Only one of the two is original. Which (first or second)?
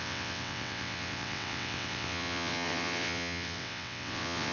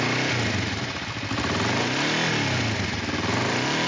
second